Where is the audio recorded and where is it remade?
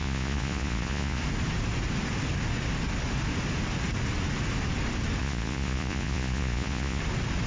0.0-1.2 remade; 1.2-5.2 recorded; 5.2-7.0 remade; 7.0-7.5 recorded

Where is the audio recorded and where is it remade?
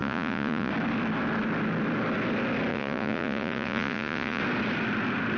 0.0-0.7 remade; 0.7-2.7 recorded; 2.7-4.4 remade; 4.4-5.4 recorded